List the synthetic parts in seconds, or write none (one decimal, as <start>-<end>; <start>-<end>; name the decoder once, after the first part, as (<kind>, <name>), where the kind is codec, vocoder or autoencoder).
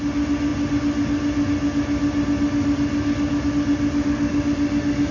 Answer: none